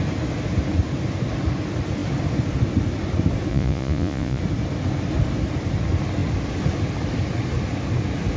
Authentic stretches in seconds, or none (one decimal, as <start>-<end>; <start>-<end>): 0.0-3.5; 4.4-8.4